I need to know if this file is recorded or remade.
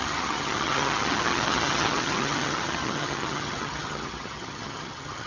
remade